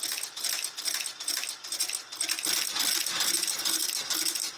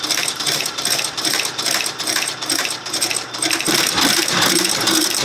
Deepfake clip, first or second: second